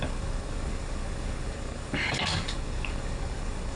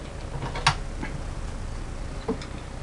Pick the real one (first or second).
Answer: second